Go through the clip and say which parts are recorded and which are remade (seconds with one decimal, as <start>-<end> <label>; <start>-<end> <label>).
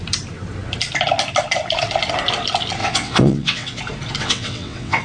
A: 0.0-2.8 recorded; 2.8-3.8 remade; 3.8-4.2 recorded; 4.2-5.0 remade